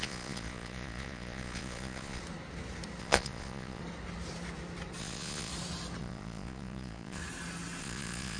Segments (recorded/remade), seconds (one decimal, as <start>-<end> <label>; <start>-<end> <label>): 0.0-2.2 remade; 2.2-3.0 recorded; 3.0-3.8 remade; 3.8-5.0 recorded; 5.0-5.5 remade; 5.5-6.0 recorded; 6.0-7.2 remade; 7.2-7.8 recorded; 7.8-8.4 remade